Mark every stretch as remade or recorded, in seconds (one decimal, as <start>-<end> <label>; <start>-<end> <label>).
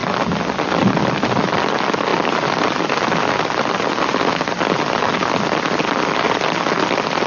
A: 0.0-7.3 recorded